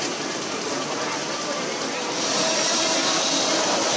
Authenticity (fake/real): real